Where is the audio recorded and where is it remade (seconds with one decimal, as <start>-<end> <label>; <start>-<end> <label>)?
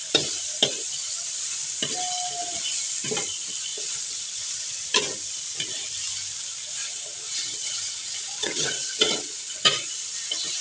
0.0-3.7 recorded; 3.7-4.5 remade; 4.5-6.8 recorded; 6.8-9.9 remade; 9.9-10.6 recorded